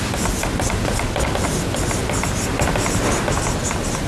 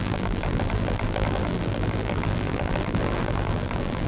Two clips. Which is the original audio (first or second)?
first